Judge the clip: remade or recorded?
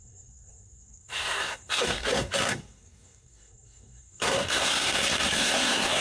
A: remade